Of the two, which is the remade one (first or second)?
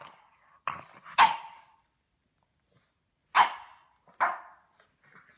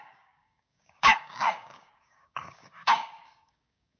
second